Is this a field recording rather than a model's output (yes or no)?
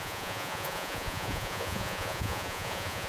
no